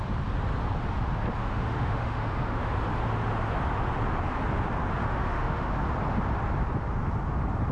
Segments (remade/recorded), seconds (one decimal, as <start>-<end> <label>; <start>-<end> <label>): 0.0-1.4 recorded; 1.4-2.7 remade; 2.7-5.0 recorded; 5.0-5.7 remade; 5.7-7.7 recorded